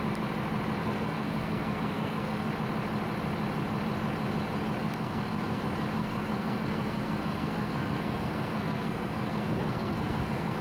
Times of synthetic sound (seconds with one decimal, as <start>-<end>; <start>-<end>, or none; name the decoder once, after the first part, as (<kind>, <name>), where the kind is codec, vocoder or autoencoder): 0.8-2.5 (codec, SNAC); 4.8-5.6; 6.0-10.6